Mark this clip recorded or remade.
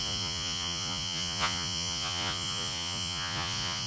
remade